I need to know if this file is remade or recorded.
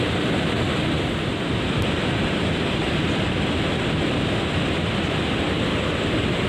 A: recorded